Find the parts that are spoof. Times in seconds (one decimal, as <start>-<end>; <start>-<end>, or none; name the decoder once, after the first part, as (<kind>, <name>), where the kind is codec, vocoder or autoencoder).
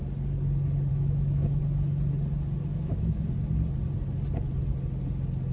0.9-1.6 (autoencoder, DAC-VAE); 2.7-3.2